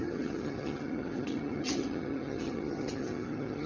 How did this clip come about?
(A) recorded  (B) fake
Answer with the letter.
B